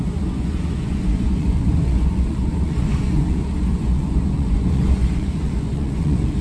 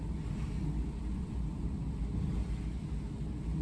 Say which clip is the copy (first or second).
first